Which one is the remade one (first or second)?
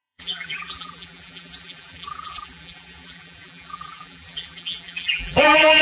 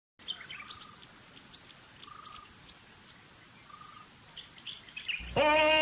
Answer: first